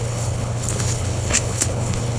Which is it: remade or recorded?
remade